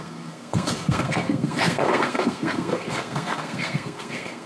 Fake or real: fake